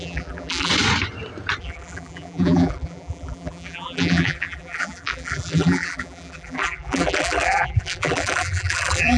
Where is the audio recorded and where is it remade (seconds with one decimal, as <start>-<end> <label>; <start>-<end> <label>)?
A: 0.0-0.7 remade; 0.7-1.6 recorded; 1.6-9.2 remade